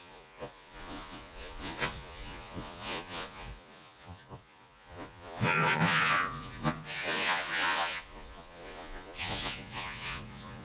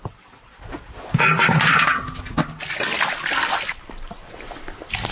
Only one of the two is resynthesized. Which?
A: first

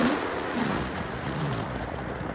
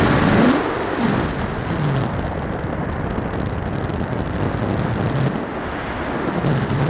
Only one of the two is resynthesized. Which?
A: first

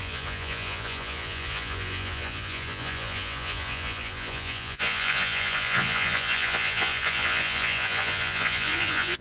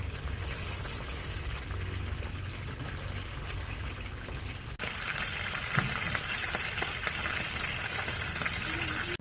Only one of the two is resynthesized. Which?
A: first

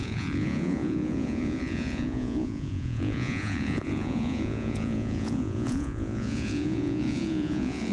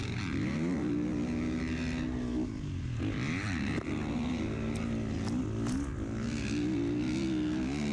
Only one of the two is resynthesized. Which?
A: first